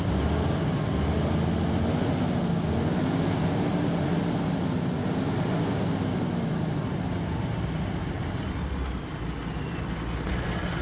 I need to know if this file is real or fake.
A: real